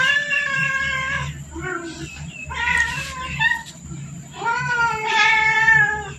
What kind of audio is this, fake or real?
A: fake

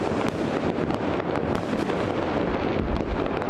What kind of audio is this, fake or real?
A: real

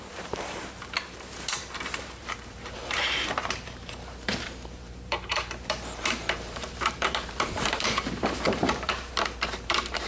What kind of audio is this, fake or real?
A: fake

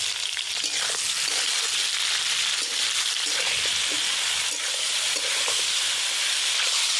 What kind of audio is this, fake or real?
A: real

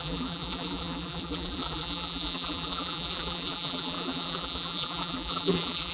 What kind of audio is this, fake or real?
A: fake